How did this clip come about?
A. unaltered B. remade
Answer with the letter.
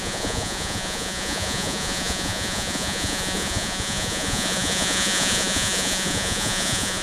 B